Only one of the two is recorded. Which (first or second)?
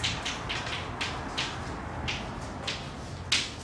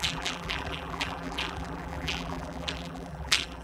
first